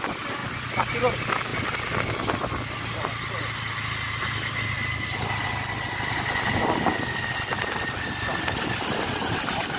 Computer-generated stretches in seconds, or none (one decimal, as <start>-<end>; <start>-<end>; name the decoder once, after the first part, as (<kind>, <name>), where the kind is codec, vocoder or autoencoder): none